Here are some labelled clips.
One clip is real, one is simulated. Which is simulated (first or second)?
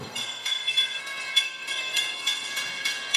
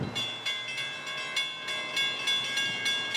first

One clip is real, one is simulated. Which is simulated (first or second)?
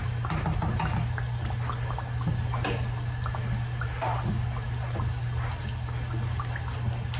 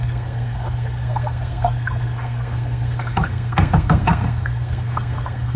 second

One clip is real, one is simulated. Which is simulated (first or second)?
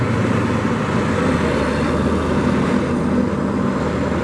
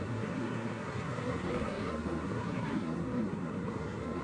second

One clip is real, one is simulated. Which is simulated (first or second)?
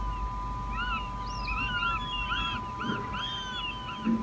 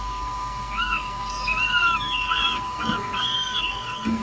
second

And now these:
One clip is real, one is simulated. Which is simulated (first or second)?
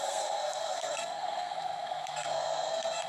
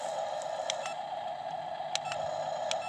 first